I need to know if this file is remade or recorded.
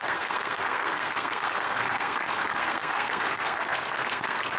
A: remade